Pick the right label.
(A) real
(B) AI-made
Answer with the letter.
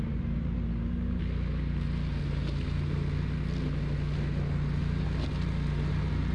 A